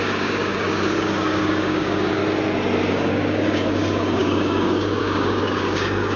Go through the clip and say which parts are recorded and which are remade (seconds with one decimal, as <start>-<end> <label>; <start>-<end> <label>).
0.0-2.2 remade; 2.2-2.9 recorded; 2.9-6.2 remade

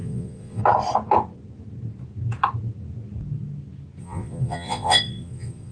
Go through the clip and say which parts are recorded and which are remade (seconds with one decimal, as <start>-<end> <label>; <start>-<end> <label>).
0.0-0.6 remade; 0.6-4.0 recorded; 4.0-5.7 remade

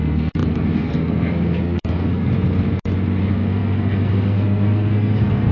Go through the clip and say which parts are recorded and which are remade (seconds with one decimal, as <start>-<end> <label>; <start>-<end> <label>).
0.0-2.3 remade; 2.3-3.2 recorded; 3.2-5.5 remade

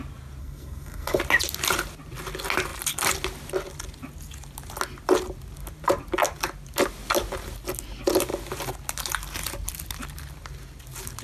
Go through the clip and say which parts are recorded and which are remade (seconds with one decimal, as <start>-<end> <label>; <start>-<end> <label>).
0.0-0.4 recorded; 0.4-1.2 remade; 1.2-11.2 recorded

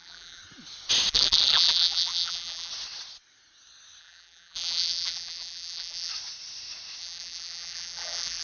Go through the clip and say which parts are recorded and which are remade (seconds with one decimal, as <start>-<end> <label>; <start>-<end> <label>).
0.0-0.4 remade; 0.4-1.1 recorded; 1.1-2.7 remade; 2.7-4.0 recorded; 4.0-6.1 remade; 6.1-7.0 recorded; 7.0-8.4 remade

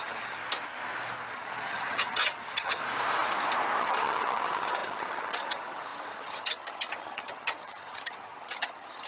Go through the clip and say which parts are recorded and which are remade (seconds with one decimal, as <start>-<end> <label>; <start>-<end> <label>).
0.0-0.4 remade; 0.4-1.3 recorded; 1.3-2.8 remade; 2.8-3.8 recorded; 3.8-9.1 remade